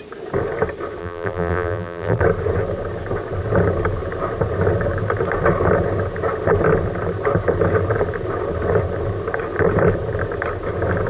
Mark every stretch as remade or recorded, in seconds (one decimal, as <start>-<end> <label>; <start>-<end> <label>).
0.0-1.0 recorded; 1.0-2.2 remade; 2.2-11.1 recorded